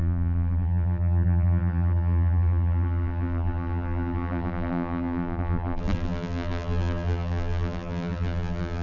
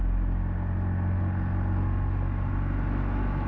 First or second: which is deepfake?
first